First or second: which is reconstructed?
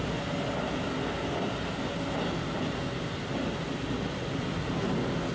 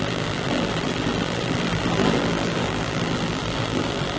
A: second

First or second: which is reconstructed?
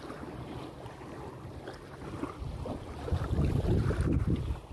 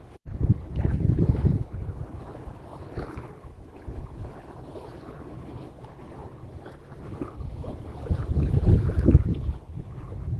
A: second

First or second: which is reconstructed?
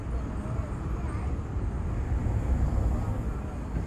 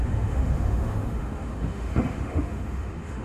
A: second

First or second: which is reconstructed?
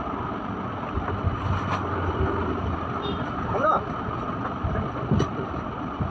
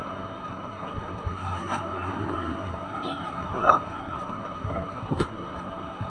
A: second